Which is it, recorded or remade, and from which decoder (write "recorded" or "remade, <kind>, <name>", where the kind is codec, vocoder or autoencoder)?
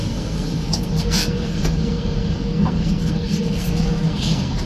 remade, codec, SNAC